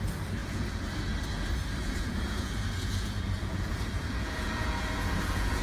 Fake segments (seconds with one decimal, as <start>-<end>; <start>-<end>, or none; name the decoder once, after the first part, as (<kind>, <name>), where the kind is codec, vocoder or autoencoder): 0.4-0.9 (vocoder, Vocos); 1.8-5.6